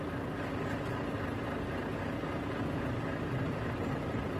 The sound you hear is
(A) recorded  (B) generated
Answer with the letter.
A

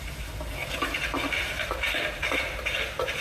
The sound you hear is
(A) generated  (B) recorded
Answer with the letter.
B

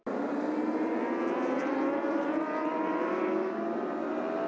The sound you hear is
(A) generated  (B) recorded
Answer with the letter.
B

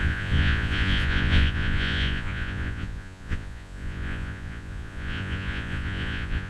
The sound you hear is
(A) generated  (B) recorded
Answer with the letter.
A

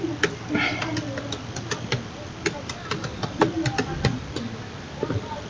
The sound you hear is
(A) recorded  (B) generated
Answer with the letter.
A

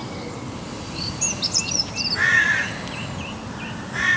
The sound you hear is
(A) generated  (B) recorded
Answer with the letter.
B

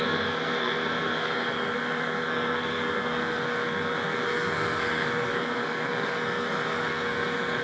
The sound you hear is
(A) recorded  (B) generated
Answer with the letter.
B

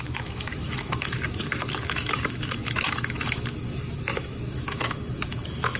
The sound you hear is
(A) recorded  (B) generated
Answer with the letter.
B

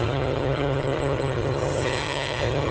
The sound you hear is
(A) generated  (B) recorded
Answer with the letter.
A